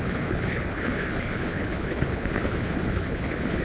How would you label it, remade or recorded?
remade